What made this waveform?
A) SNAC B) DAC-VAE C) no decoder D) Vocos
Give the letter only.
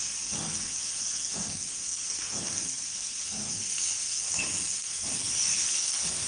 A